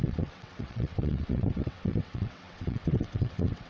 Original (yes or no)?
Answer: no